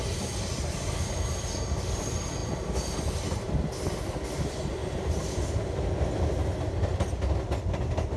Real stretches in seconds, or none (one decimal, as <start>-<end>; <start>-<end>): 0.0-8.2